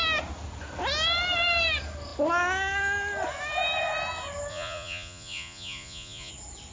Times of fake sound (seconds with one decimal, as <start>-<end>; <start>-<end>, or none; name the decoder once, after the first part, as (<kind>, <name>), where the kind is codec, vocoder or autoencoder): 4.5-6.3 (vocoder, Vocos)